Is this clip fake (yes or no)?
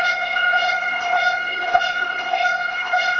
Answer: yes